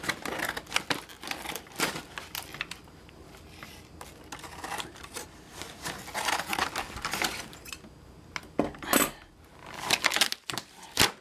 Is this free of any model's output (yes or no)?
yes